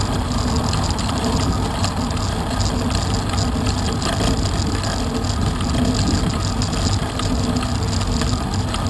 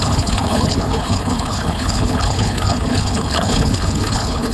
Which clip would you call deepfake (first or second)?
second